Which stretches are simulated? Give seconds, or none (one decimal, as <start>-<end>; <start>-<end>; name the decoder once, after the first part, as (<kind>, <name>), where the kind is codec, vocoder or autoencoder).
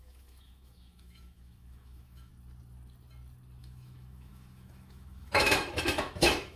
0.0-2.3 (autoencoder, DAC-VAE); 3.6-6.6